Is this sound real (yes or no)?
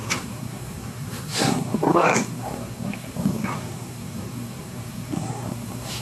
no